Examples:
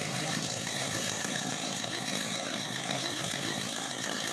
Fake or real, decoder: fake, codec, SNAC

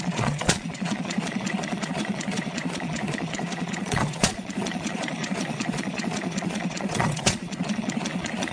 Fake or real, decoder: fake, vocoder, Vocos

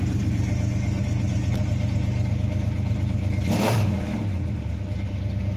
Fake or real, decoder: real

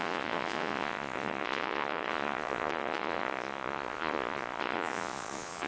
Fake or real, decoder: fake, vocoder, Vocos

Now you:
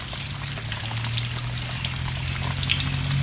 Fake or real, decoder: real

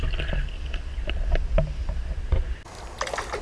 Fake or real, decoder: real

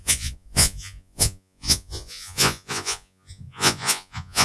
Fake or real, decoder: fake, vocoder, Vocos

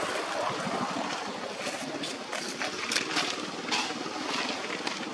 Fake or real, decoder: real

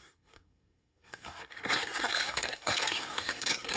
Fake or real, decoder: fake, codec, SNAC